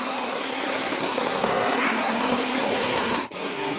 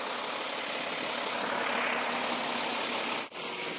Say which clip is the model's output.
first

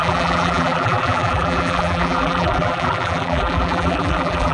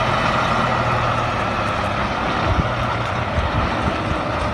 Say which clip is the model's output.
first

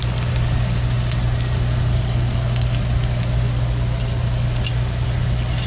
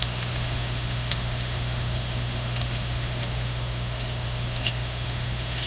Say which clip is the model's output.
second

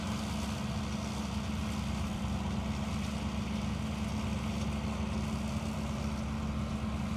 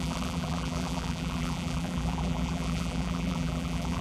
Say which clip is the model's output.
second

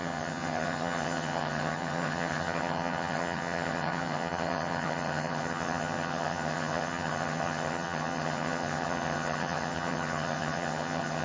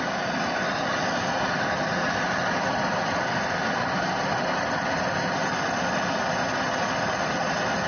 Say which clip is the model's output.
first